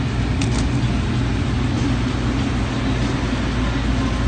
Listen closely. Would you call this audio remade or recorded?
recorded